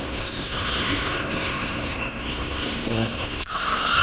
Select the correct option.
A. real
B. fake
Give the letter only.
B